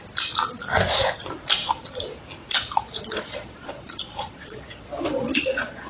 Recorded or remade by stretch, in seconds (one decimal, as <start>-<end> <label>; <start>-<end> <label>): 0.0-2.4 recorded; 2.4-5.9 remade